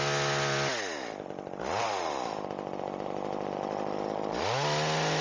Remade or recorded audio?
recorded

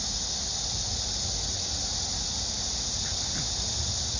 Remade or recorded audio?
recorded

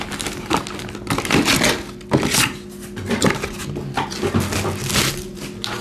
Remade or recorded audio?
recorded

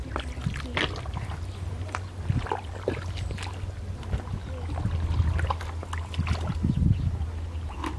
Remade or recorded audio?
recorded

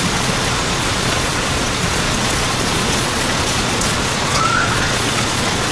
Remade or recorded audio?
remade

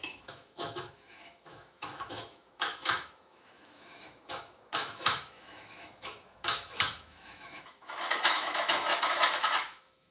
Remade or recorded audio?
remade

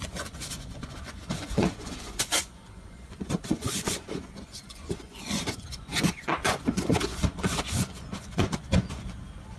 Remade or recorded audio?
remade